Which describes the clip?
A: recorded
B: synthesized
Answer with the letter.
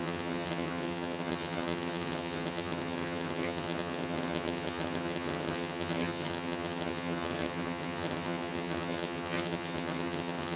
B